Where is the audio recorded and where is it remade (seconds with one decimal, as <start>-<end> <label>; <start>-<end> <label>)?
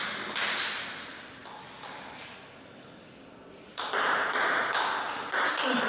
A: 0.0-3.7 recorded; 3.7-4.8 remade; 4.8-5.9 recorded